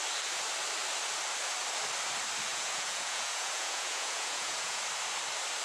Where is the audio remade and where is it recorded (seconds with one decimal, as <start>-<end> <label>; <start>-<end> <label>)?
0.0-2.5 recorded; 2.5-4.8 remade; 4.8-5.6 recorded